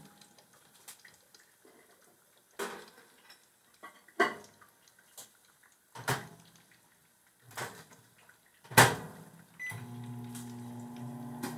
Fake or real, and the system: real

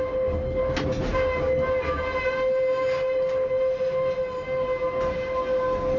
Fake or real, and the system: real